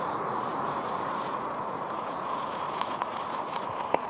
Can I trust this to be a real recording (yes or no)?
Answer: no